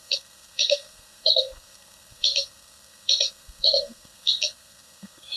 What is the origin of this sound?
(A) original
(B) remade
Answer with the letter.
B